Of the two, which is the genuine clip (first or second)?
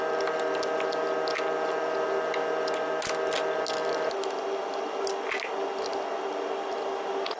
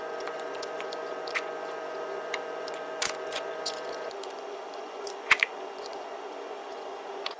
first